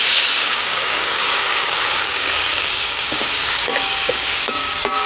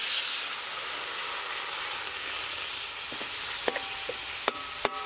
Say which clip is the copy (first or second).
first